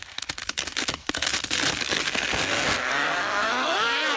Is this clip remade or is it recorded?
remade